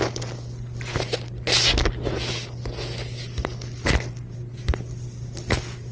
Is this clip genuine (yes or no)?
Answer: yes